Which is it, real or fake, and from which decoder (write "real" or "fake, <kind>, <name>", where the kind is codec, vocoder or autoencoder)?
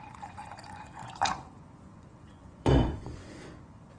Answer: fake, vocoder, Vocos